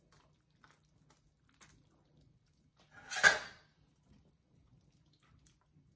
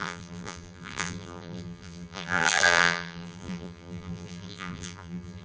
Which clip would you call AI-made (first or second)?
second